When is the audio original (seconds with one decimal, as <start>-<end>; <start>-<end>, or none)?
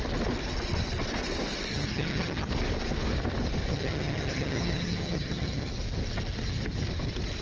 0.0-1.7; 2.5-3.7; 5.7-7.4